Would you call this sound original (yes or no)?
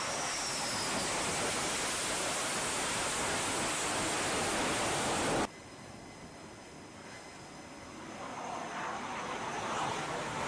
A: yes